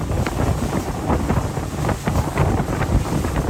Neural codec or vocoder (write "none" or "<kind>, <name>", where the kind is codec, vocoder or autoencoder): none